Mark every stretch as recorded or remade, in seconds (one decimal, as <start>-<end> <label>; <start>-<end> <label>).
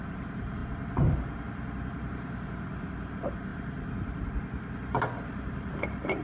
0.0-6.2 remade